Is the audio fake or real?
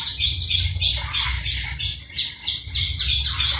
real